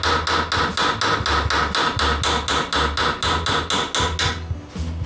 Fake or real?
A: real